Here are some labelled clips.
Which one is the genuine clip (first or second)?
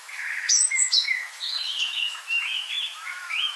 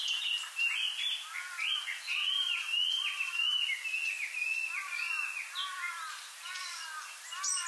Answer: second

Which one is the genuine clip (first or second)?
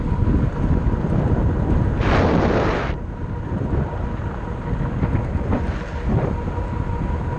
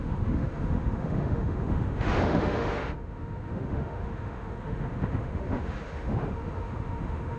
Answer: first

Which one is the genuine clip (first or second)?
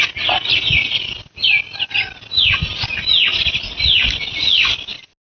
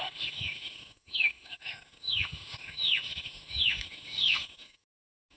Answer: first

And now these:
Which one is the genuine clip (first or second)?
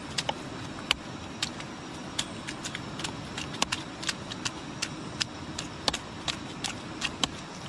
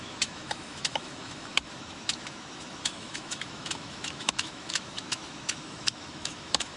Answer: first